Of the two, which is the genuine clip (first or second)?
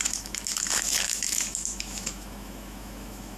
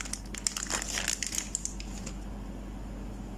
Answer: second